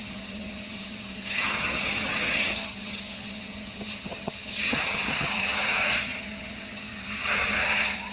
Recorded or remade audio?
remade